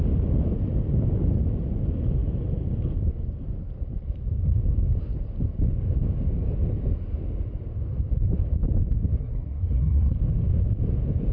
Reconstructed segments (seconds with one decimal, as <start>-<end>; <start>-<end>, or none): 9.2-10.2